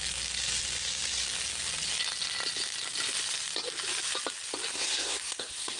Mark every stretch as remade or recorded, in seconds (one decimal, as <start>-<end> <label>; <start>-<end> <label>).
0.0-4.7 recorded; 4.7-5.8 remade